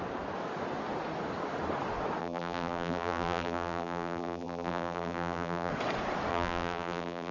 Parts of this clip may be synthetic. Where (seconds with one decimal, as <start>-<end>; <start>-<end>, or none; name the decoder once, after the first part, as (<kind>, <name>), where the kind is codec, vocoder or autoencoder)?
2.2-5.7 (vocoder, BigVGAN v2); 6.3-7.3